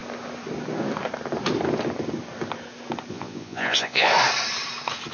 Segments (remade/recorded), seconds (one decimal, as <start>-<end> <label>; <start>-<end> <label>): 0.0-3.1 recorded; 3.1-4.1 remade; 4.1-5.1 recorded